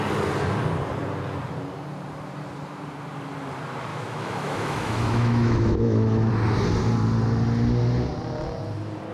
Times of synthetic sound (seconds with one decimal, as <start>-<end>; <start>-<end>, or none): 3.9-6.3